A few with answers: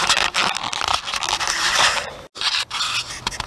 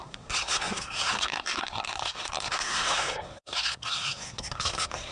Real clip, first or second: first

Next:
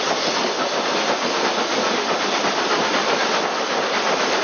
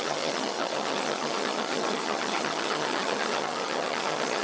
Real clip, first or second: first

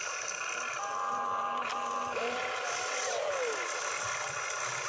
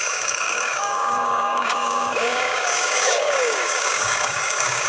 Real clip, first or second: first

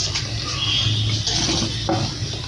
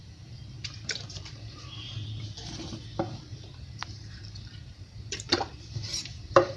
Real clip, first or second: first